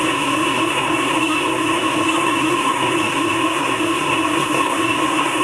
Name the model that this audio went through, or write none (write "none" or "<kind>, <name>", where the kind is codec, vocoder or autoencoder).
codec, SNAC